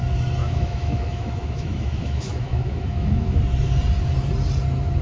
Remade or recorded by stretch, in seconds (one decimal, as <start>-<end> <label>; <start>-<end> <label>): 0.0-0.4 recorded; 0.4-3.4 remade; 3.4-5.0 recorded